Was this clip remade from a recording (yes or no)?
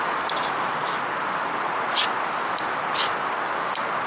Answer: no